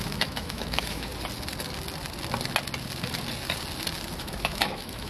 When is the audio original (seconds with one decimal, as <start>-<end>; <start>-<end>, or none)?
1.1-4.2